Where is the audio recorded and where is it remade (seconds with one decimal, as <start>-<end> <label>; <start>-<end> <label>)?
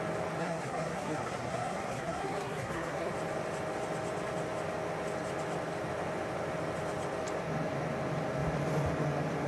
0.0-0.4 recorded; 0.4-3.1 remade; 3.1-9.5 recorded